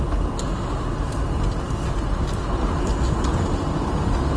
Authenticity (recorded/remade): recorded